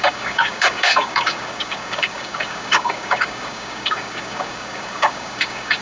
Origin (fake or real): fake